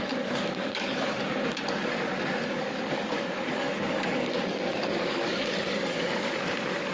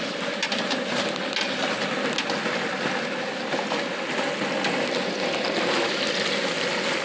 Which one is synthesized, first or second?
first